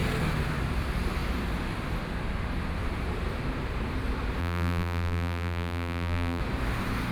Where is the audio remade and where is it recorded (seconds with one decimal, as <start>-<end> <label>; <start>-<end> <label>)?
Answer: 0.0-4.4 recorded; 4.4-6.4 remade; 6.4-7.1 recorded